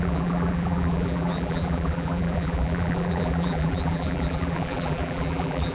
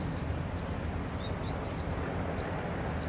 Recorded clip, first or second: second